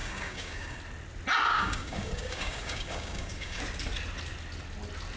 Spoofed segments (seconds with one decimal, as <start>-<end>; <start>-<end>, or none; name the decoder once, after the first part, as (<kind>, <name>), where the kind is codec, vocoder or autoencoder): 0.0-0.8 (codec, DAC); 1.5-3.6